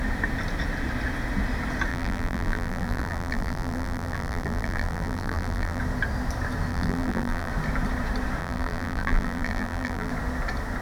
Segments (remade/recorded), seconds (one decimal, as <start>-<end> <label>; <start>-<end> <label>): 0.0-1.9 recorded; 1.9-5.8 remade; 5.8-6.7 recorded; 6.7-7.5 remade; 7.5-8.4 recorded; 8.4-10.1 remade; 10.1-10.8 recorded